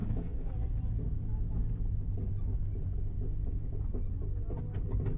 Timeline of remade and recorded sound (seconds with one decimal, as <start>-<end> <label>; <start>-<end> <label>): 0.0-0.5 remade; 0.5-5.2 recorded